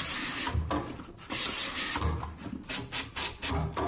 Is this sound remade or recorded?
recorded